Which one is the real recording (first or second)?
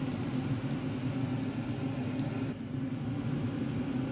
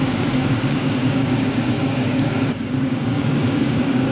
first